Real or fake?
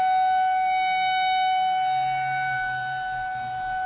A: real